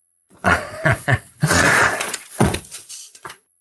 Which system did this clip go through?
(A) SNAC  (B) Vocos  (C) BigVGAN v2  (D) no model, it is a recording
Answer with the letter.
B